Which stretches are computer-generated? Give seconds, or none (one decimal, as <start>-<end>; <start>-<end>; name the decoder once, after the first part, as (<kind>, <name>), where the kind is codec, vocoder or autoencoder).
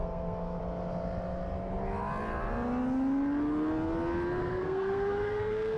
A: 0.0-0.6 (codec, SNAC); 4.4-5.8